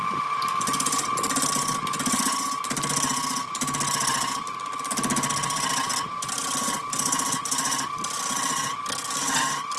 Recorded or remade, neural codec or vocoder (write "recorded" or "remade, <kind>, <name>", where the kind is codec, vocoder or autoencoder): recorded